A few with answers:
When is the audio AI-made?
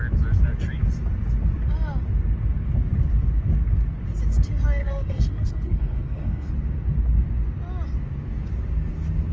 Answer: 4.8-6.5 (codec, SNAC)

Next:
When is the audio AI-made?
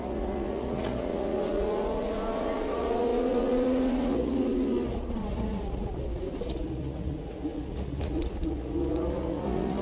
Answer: 0.0-9.8 (vocoder, Vocos)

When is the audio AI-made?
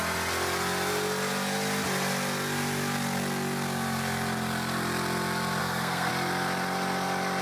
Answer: 5.6-6.1 (codec, SNAC)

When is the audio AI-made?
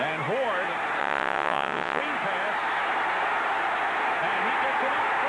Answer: 1.0-2.0 (vocoder, WaveNeXt)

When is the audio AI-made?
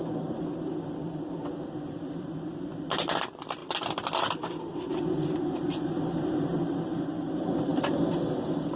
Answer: none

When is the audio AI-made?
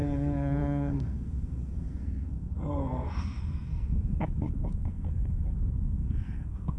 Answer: 0.0-6.8 (codec, SNAC)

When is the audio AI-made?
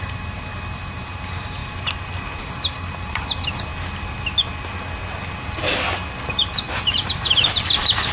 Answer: 0.0-1.6 (vocoder, BigVGAN v2); 2.4-3.7; 6.3-8.1